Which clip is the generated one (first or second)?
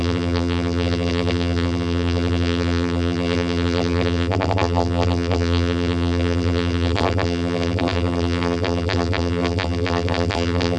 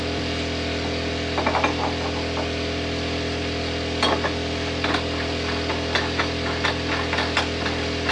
first